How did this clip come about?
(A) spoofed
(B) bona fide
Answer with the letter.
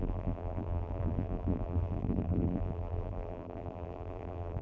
A